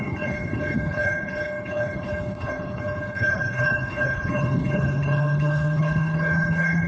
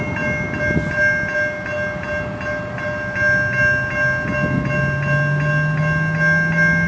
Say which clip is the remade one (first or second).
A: first